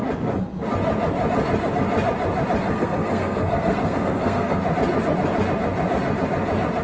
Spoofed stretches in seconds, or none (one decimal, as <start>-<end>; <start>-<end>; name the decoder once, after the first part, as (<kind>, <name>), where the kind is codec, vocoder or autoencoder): 2.6-4.6 (codec, SNAC)